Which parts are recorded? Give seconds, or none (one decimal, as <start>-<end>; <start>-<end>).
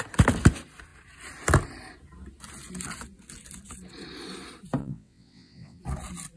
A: 0.0-4.8; 5.8-6.4